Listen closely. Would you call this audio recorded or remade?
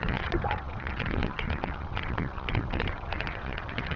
remade